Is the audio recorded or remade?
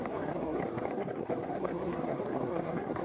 remade